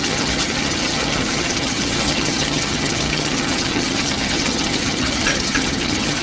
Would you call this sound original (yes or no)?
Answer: no